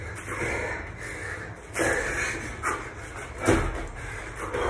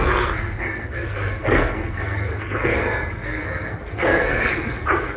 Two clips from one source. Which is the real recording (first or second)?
first